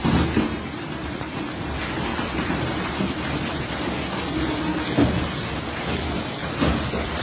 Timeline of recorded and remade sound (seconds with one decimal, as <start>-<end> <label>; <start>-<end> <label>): 0.0-0.5 recorded; 0.5-1.3 remade; 1.3-2.1 recorded; 2.1-3.1 remade; 3.1-7.2 recorded